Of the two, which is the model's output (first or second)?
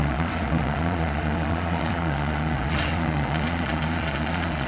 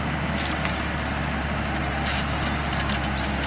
first